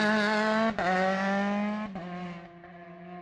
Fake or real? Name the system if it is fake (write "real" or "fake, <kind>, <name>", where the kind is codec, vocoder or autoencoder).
real